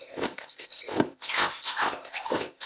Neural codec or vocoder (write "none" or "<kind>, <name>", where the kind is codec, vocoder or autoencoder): codec, ZipCodec